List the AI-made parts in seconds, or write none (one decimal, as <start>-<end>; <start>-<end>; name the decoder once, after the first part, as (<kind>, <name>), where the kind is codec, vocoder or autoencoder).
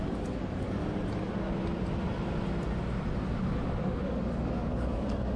0.0-0.8 (codec, DAC); 3.8-5.4